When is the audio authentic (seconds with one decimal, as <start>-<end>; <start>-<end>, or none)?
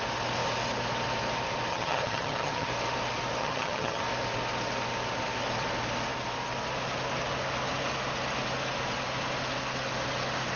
0.0-1.7; 2.7-3.4; 4.0-10.6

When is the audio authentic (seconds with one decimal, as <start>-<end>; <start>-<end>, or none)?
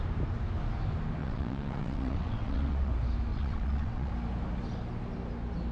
0.0-1.2; 2.9-3.3; 4.1-5.7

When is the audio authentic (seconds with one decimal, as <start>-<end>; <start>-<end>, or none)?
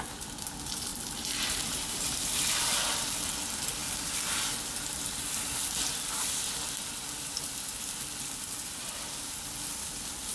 0.0-0.9; 2.7-10.3